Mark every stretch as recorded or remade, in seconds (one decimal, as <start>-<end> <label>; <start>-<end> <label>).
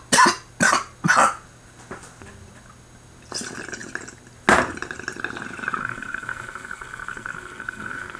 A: 0.0-5.8 recorded; 5.8-8.2 remade